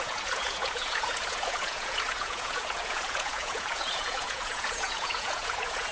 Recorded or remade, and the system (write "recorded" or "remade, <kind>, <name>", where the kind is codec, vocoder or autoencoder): remade, vocoder, Vocos